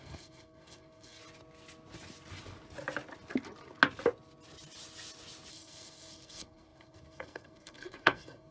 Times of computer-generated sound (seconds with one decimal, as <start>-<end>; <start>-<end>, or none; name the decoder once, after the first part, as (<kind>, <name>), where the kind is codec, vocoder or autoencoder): 0.0-1.2 (codec, SNAC); 5.5-8.5